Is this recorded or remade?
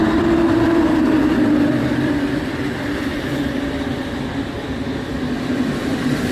remade